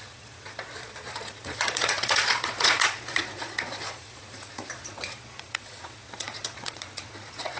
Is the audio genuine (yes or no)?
no